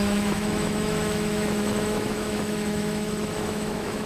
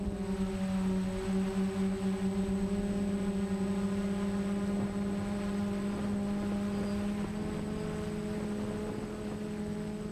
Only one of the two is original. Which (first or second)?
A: second